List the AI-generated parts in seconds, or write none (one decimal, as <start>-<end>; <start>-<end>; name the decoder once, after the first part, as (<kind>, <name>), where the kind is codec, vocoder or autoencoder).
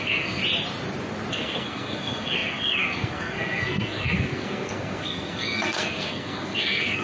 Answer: 0.0-0.4 (codec, SNAC); 1.3-7.0